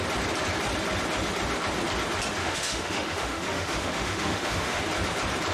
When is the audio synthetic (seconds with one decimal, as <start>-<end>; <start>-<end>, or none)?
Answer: 2.4-4.8